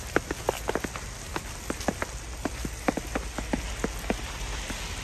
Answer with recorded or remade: recorded